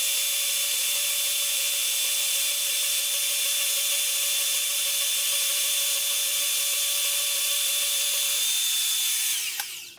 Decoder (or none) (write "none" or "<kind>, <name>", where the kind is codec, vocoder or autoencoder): none